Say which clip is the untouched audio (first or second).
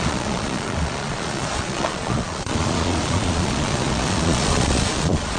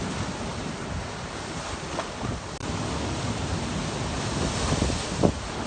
second